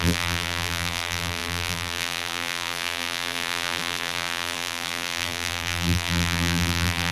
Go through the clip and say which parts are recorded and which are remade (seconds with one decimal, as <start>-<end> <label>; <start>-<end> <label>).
0.0-7.1 remade